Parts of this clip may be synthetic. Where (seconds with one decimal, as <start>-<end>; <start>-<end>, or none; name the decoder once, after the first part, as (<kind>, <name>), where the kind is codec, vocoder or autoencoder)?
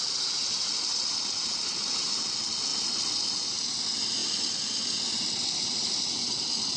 none